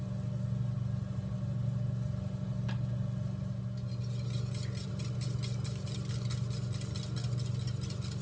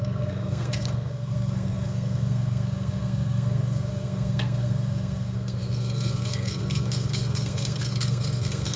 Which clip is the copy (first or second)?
second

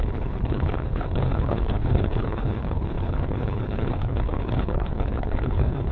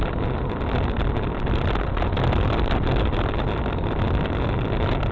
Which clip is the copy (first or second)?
first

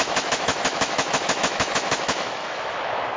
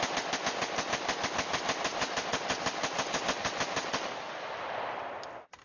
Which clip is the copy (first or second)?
first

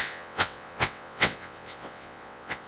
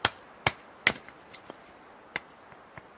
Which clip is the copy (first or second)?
first